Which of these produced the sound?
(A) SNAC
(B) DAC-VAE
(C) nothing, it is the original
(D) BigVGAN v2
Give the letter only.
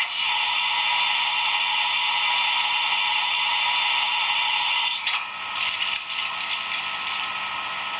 C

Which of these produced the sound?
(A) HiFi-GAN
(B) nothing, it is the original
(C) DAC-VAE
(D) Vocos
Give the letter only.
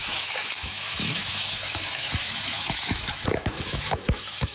C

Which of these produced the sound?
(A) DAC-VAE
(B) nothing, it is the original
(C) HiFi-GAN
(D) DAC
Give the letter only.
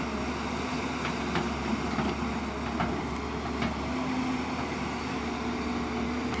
B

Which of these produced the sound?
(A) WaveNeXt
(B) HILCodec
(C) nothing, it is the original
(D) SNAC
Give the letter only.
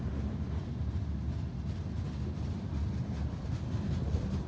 C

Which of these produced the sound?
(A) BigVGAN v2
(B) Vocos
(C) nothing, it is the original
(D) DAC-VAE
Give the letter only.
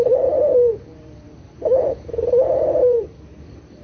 A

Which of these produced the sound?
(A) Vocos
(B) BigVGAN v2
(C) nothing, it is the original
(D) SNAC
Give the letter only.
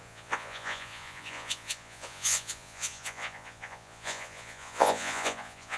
A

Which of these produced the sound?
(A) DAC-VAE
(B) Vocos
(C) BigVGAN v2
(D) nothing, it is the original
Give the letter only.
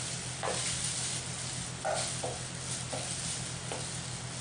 D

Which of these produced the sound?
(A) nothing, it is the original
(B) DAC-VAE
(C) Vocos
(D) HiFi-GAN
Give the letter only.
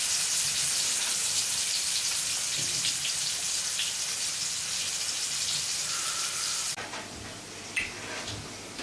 A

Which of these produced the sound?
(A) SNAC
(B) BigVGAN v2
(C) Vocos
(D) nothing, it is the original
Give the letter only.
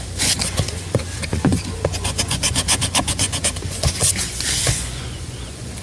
C